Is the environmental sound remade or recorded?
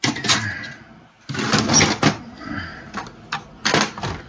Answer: recorded